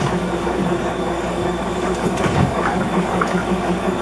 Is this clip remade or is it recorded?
remade